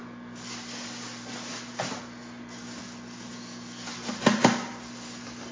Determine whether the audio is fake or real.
real